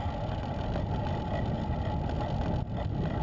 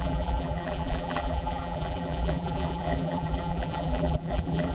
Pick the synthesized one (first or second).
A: second